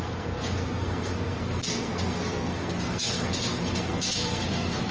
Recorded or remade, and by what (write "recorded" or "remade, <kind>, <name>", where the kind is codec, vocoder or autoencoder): remade, codec, SNAC